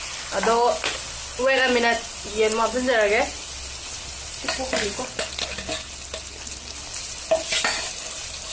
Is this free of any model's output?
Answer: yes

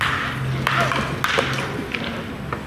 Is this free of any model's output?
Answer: yes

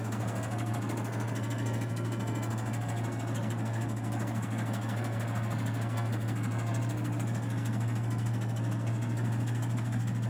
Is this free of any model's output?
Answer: no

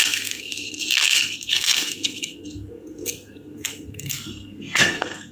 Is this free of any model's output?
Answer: no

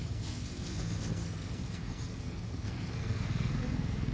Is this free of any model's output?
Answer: no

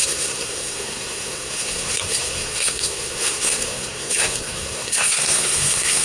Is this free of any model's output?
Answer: no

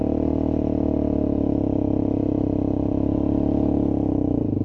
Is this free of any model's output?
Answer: yes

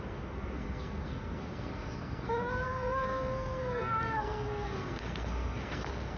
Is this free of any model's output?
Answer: no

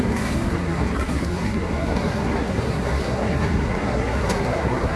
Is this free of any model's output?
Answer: no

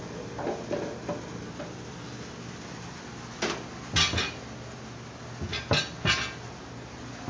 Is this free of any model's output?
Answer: yes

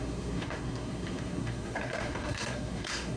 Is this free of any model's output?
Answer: no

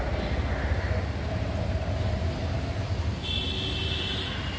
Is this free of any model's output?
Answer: yes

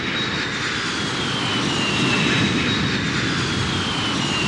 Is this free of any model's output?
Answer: yes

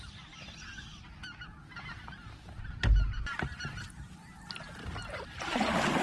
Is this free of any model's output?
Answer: yes